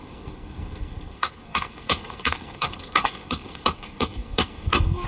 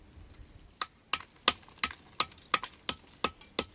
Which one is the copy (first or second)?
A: first